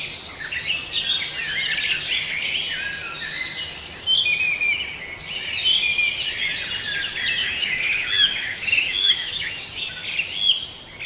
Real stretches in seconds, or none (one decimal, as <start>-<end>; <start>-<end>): 0.0-7.4; 9.6-11.1

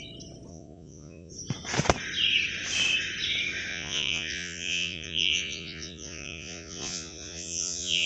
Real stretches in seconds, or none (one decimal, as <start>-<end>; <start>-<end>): 0.0-0.5; 1.3-3.7

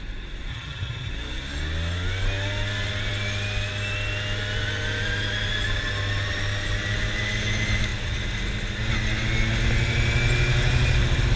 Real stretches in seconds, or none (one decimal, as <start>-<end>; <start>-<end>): 0.0-0.5; 1.1-11.4